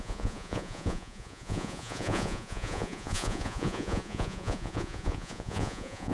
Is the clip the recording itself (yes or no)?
no